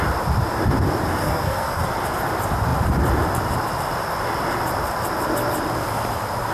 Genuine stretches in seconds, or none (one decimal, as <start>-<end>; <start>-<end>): 0.0-1.2; 1.8-6.5